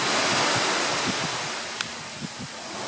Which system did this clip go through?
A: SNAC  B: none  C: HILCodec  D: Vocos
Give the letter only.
B